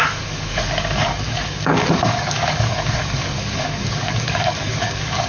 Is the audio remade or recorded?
remade